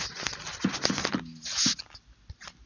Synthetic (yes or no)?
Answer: no